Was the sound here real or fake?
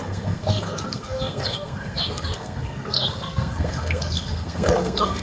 fake